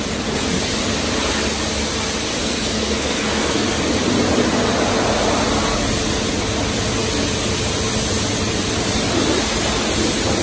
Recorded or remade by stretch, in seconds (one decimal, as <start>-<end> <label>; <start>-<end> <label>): 0.0-2.3 recorded; 2.3-3.8 remade; 3.8-10.4 recorded